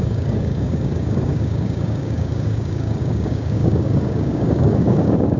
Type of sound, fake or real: fake